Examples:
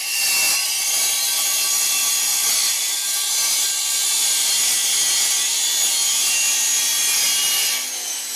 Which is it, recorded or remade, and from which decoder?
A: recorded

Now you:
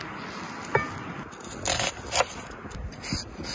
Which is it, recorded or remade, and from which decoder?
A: recorded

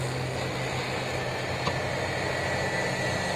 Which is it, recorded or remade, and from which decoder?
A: recorded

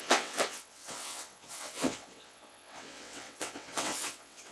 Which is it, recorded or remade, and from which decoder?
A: remade, vocoder, WaveNeXt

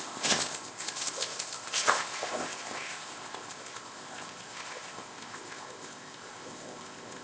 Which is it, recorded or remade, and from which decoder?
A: remade, codec, ZipCodec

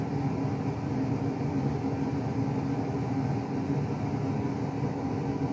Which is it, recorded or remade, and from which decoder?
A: recorded